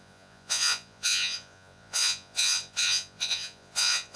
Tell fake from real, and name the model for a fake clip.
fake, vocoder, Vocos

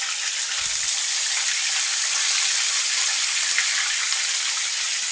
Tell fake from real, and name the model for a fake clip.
real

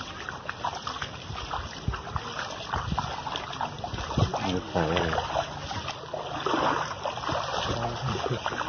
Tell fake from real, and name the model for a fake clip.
real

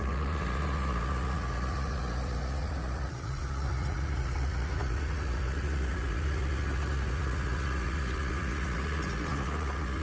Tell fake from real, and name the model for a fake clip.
fake, vocoder, Vocos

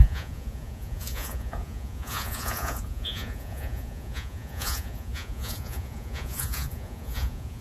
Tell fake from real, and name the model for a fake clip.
fake, vocoder, Vocos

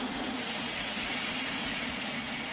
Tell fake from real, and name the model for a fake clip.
fake, vocoder, Vocos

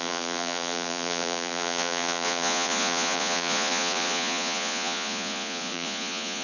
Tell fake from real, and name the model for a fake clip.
fake, vocoder, Vocos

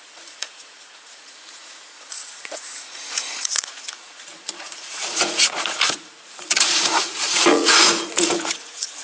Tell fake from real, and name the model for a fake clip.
fake, vocoder, Vocos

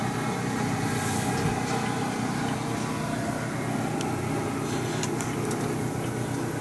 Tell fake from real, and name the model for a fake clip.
real